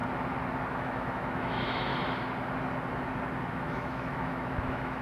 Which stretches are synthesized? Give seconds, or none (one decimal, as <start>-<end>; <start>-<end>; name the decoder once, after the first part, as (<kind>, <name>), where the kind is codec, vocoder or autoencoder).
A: 0.7-1.9 (autoencoder, DAC-VAE); 3.5-5.0